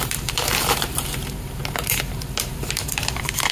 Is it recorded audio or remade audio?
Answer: remade